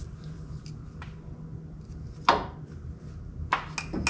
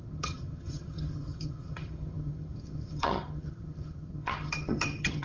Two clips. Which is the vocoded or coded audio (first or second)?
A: second